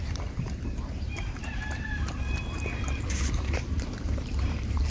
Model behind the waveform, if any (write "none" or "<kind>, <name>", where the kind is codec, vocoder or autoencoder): vocoder, BigVGAN v2